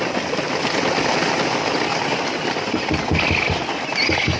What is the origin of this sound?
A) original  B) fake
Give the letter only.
A